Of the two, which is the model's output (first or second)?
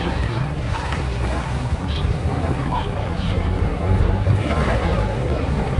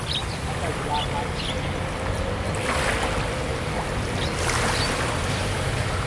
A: first